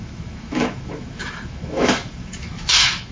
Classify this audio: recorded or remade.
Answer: remade